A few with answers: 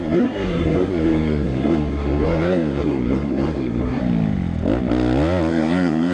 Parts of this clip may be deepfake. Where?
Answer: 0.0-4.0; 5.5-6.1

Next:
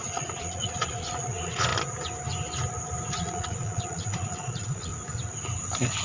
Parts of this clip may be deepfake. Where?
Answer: 0.0-1.7; 3.1-4.9

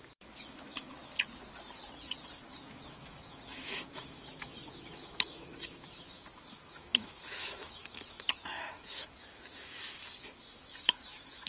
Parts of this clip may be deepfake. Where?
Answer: 0.0-1.0; 2.5-11.5

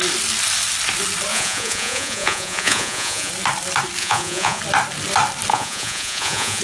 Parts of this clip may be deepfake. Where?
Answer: 1.3-3.3; 4.0-4.6; 5.5-6.6

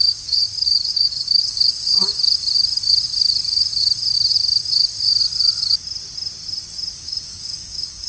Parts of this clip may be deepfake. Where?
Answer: 0.0-0.4; 0.9-2.1; 6.9-8.1

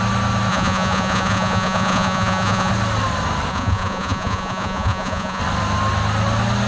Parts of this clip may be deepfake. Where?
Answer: 0.5-2.7; 3.5-5.4

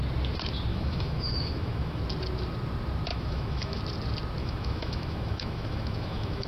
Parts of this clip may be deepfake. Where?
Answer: 0.7-2.0; 3.1-3.8; 4.4-6.5